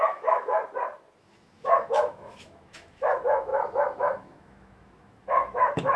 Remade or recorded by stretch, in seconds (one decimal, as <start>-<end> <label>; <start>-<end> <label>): 0.0-0.6 remade; 0.6-1.2 recorded; 1.2-6.0 remade